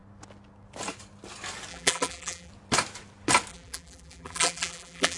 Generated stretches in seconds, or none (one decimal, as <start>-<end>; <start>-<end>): 1.7-2.5; 3.5-5.2

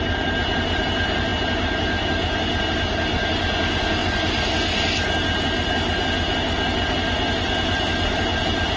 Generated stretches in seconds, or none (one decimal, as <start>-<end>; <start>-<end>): none

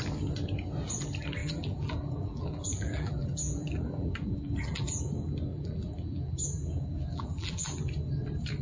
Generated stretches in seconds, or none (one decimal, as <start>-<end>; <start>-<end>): 1.4-5.0; 5.5-7.8

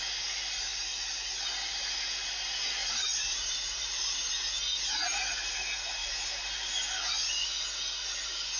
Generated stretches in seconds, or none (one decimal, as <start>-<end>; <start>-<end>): 2.8-4.3

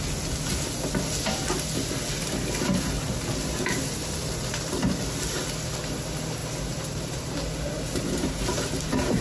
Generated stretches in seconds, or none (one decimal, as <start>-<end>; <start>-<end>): 6.4-8.4

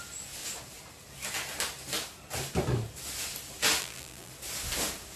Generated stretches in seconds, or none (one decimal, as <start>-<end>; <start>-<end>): 3.8-4.3